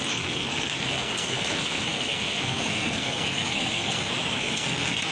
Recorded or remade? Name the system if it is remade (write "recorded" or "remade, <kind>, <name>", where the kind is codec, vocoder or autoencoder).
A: remade, codec, SNAC